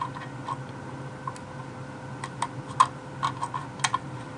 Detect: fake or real real